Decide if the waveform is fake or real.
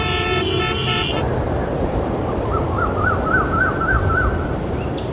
fake